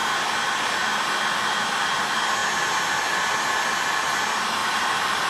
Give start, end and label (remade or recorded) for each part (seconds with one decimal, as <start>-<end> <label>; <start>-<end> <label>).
0.0-4.6 recorded; 4.6-5.3 remade